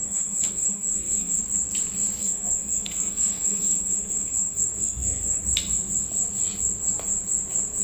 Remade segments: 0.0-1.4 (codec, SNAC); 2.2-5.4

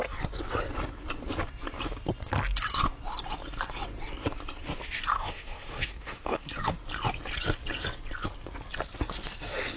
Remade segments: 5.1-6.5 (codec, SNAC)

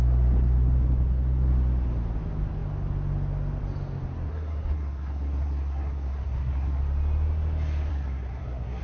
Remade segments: 4.3-6.8 (codec, SNAC); 7.9-8.8

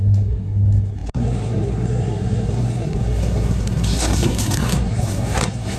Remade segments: 0.0-5.8 (codec, SNAC)

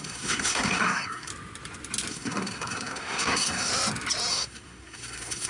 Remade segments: 0.0-1.3 (codec, SNAC); 2.1-3.7; 4.3-5.5

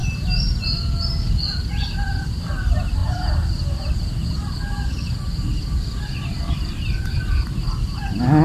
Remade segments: none

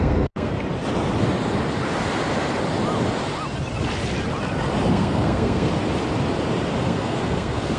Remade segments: 0.0-0.5 (codec, SNAC); 4.9-5.7; 6.8-7.8

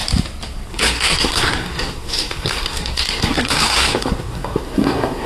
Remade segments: 0.7-5.3 (codec, SNAC)